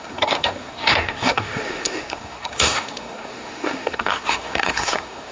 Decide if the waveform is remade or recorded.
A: remade